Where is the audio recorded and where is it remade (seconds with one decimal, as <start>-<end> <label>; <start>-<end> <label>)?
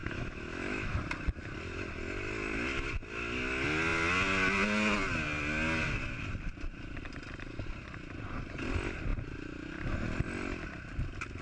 0.0-1.0 remade; 1.0-11.4 recorded